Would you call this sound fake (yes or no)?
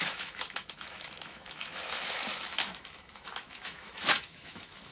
yes